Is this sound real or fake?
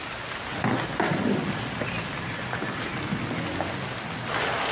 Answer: real